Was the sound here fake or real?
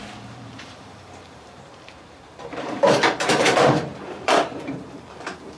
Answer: fake